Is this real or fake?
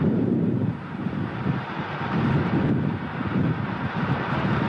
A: fake